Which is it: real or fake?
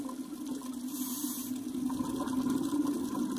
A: real